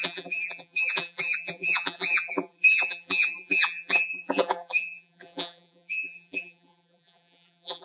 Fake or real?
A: fake